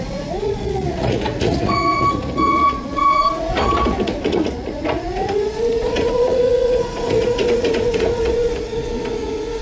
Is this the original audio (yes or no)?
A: no